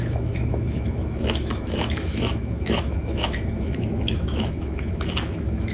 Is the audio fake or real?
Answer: fake